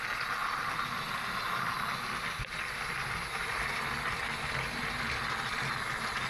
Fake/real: real